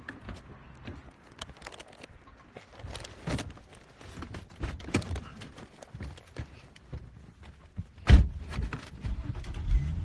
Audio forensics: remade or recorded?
recorded